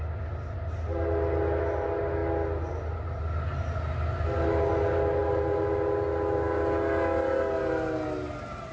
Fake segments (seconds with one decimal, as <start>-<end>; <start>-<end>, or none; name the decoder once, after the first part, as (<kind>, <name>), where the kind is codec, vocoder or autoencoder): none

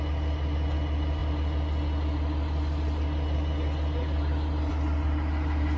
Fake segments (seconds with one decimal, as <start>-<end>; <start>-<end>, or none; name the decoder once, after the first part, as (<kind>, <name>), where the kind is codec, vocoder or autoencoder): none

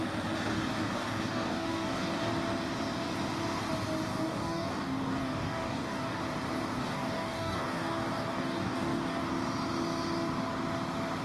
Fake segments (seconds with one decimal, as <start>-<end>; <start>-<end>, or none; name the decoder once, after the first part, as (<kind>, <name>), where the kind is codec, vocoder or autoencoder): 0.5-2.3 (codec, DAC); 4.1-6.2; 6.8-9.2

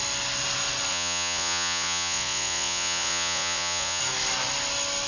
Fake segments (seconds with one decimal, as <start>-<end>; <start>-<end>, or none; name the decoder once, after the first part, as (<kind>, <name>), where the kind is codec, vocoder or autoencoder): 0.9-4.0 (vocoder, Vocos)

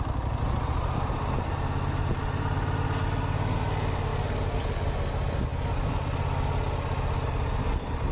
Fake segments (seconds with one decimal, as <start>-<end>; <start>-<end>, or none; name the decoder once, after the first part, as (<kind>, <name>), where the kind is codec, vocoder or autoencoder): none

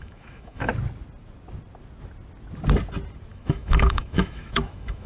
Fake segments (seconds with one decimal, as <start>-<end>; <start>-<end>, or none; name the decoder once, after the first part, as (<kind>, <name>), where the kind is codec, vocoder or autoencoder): 0.0-0.7 (autoencoder, DAC-VAE); 3.3-5.1

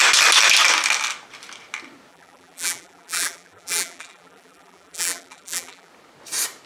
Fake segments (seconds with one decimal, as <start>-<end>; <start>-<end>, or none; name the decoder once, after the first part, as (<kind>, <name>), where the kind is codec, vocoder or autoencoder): 2.1-5.9 (vocoder, BigVGAN v2)

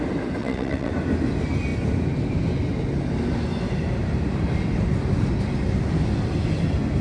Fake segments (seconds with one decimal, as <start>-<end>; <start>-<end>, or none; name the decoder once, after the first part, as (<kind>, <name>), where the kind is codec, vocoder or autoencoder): 0.4-0.9 (vocoder, WaveNeXt)